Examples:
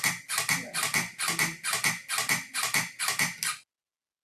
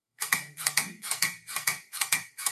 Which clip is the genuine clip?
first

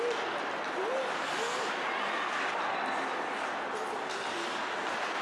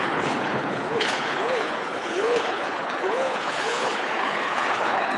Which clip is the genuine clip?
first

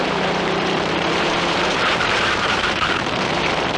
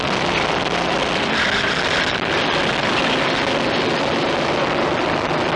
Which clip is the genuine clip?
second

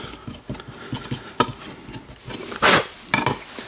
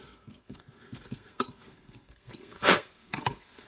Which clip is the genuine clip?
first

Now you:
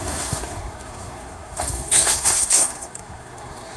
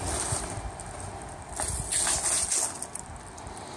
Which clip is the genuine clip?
second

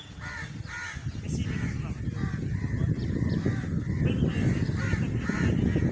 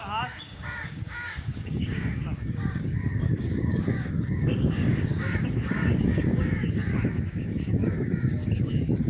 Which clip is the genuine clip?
first